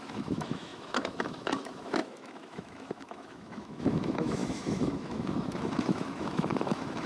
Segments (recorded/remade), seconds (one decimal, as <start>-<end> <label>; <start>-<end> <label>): 0.0-7.1 remade